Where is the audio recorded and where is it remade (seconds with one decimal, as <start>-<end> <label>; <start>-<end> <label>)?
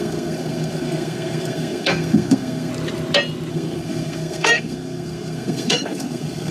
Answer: 0.0-2.7 remade; 2.7-3.5 recorded; 3.5-6.5 remade